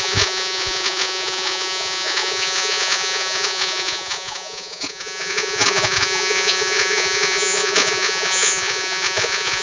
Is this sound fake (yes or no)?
yes